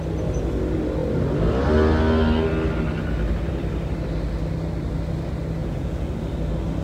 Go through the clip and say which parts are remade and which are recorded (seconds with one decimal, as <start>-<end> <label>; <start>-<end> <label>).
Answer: 0.0-5.6 recorded; 5.6-6.1 remade; 6.1-6.8 recorded